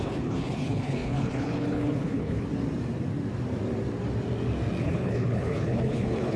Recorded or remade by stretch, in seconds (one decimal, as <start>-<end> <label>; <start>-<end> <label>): 0.0-2.5 remade; 2.5-4.8 recorded; 4.8-6.4 remade